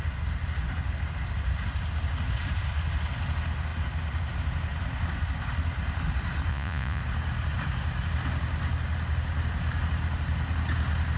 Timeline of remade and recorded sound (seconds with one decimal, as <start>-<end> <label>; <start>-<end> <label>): 0.0-6.5 recorded; 6.5-7.0 remade; 7.0-11.2 recorded